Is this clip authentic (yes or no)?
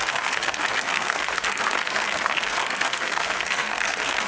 no